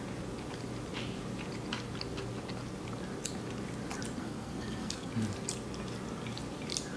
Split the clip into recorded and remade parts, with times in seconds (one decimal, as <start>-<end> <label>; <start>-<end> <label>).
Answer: 0.0-4.2 recorded; 4.2-5.1 remade; 5.1-7.0 recorded